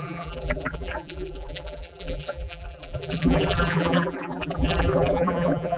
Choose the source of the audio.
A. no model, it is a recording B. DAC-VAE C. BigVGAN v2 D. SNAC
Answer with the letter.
C